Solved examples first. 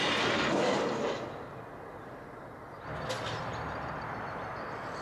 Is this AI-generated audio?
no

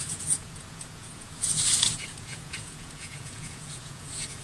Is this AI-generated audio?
yes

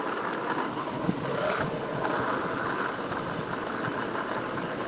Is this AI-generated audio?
no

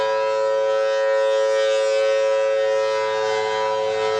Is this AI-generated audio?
no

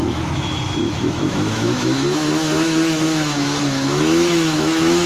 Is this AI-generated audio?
yes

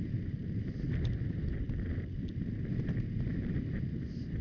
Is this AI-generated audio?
no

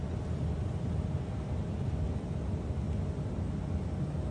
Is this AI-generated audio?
no